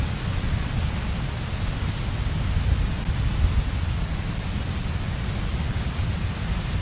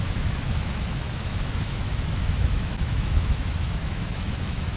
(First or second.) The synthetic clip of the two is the second